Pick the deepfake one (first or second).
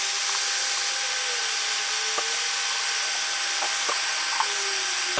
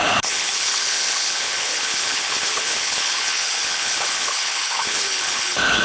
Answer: second